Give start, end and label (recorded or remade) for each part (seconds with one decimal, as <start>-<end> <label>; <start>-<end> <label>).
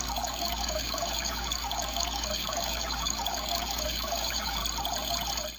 0.0-4.6 remade; 4.6-5.6 recorded